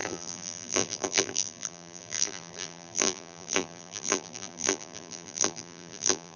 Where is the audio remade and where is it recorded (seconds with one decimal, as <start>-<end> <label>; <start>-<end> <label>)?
0.0-6.4 remade